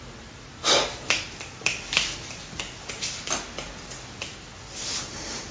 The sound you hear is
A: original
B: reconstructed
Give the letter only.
A